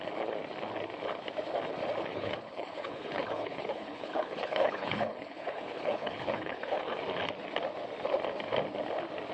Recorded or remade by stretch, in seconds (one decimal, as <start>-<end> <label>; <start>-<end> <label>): 0.0-2.1 recorded; 2.1-7.0 remade; 7.0-9.3 recorded